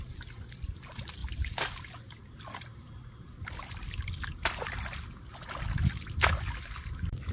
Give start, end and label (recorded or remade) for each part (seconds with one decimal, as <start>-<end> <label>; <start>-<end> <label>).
0.0-1.2 recorded; 1.2-5.6 remade; 5.6-7.3 recorded